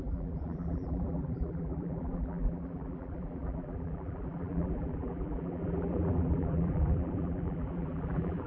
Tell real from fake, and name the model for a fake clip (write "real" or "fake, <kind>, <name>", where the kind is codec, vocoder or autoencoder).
fake, vocoder, BigVGAN v2